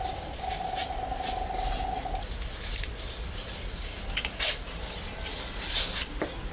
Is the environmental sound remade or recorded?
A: recorded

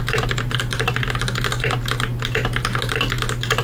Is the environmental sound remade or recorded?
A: recorded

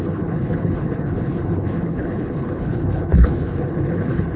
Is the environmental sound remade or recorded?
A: remade